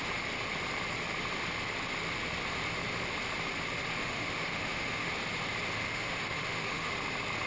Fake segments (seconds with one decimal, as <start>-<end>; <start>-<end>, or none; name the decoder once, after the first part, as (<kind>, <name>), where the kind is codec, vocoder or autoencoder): 4.0-5.1 (autoencoder, DAC-VAE); 5.9-6.9